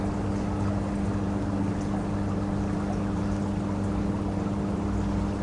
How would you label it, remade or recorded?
recorded